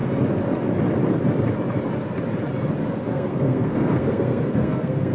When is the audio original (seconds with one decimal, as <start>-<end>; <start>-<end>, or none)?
0.0-3.1